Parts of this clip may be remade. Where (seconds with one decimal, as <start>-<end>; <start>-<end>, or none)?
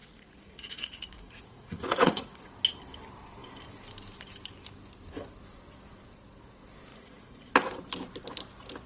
0.0-2.5; 6.9-7.5